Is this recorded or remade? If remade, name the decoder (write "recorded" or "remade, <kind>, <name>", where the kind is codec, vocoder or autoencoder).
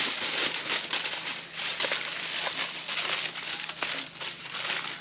recorded